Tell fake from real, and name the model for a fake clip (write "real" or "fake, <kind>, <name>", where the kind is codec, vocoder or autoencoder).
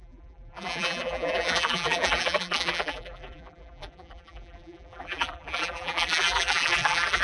fake, vocoder, BigVGAN v2